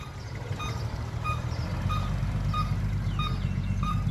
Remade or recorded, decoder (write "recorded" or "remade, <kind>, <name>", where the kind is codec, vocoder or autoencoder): recorded